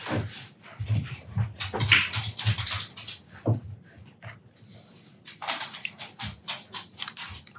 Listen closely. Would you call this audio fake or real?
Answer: real